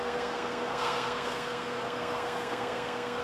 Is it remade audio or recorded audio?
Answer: remade